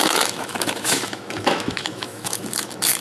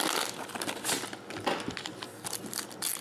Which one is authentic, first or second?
second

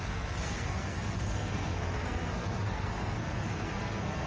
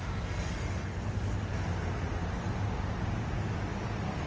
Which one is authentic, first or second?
second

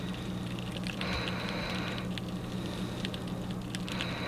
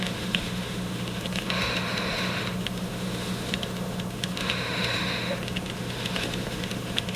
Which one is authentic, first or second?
first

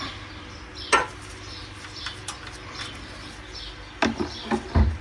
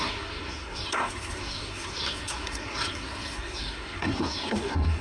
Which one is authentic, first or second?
first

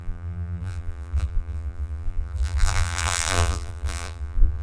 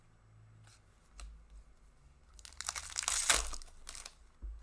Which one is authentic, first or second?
second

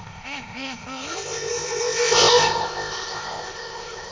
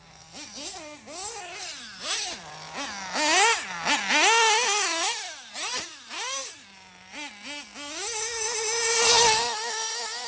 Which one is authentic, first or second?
second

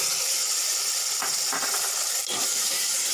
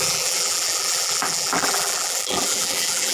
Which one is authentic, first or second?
first